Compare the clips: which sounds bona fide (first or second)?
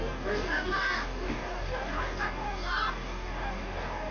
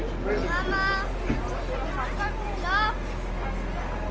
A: second